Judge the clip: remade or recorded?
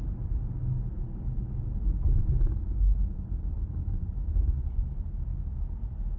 recorded